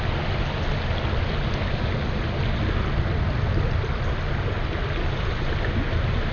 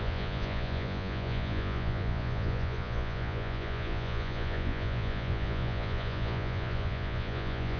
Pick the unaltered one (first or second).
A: first